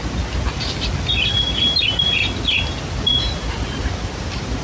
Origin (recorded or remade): recorded